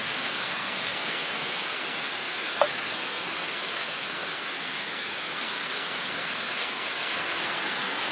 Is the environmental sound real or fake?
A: fake